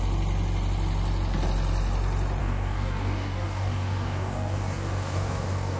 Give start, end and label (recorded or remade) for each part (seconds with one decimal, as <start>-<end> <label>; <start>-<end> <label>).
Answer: 0.0-2.4 recorded; 2.4-5.8 remade